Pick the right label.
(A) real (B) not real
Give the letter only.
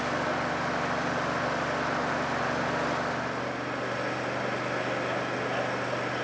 A